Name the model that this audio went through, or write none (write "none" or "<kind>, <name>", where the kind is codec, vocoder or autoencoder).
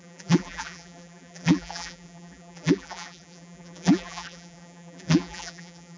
vocoder, BigVGAN v2